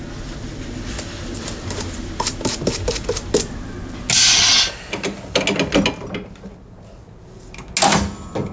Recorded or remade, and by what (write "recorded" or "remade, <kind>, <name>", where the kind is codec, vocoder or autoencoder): recorded